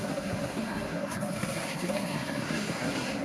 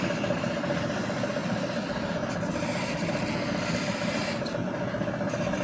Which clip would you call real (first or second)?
second